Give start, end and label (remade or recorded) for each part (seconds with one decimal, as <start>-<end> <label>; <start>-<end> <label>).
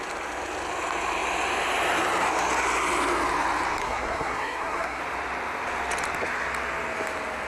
0.0-3.8 recorded; 3.8-5.0 remade; 5.0-7.5 recorded